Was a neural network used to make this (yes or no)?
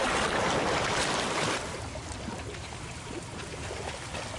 no